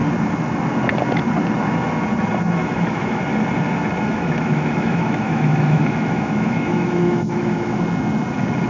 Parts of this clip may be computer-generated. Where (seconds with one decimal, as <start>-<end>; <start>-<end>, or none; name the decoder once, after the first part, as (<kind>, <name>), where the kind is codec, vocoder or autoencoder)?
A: 2.6-3.2 (autoencoder, DAC-VAE); 4.1-7.8